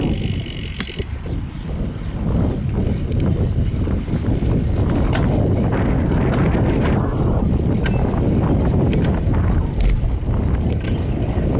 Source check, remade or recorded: recorded